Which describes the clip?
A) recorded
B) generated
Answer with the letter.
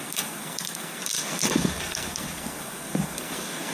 B